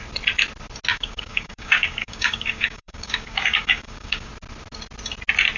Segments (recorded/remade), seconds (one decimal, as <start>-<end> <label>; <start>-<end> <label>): 0.0-0.9 recorded; 0.9-4.3 remade; 4.3-5.6 recorded